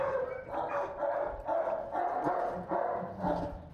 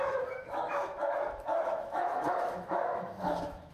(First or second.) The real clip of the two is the first